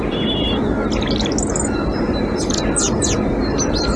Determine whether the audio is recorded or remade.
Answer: recorded